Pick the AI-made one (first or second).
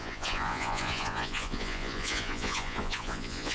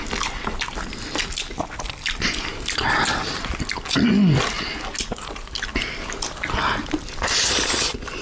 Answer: first